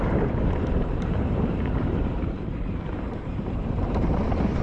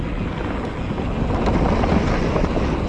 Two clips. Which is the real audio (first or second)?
second